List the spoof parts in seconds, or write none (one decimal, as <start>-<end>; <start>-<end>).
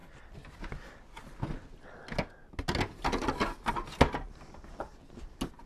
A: none